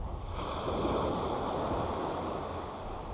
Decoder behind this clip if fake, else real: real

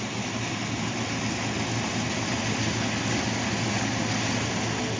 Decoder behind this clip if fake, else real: real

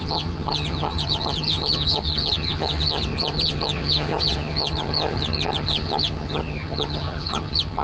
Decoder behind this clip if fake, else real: fake, vocoder, HiFi-GAN